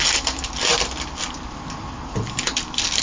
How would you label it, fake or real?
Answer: real